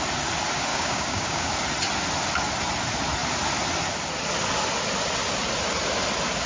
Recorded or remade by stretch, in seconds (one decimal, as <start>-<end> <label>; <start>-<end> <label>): 0.0-0.7 recorded; 0.7-1.5 remade; 1.5-6.5 recorded